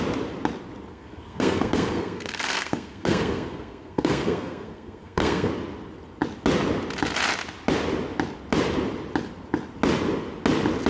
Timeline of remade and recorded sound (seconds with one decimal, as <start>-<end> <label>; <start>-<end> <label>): 0.0-0.9 recorded; 0.9-5.5 remade; 5.5-10.9 recorded